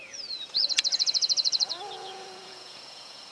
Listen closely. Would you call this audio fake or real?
fake